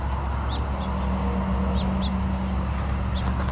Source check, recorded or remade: recorded